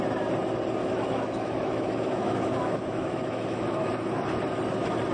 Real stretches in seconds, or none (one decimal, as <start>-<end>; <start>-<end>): 0.0-0.8; 3.9-5.1